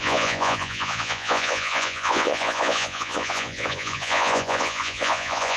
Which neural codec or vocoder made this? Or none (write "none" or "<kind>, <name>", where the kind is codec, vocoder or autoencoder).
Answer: vocoder, Vocos